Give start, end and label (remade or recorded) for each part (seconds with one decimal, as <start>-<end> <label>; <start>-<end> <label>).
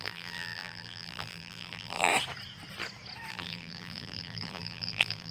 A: 0.0-2.1 remade; 2.1-3.3 recorded; 3.3-5.3 remade